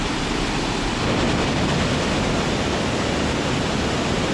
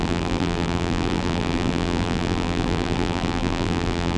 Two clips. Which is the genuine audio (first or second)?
first